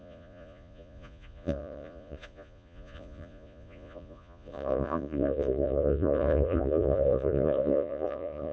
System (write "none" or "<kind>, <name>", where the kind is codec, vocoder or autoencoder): vocoder, Vocos